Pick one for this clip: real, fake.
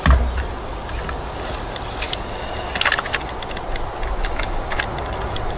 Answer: real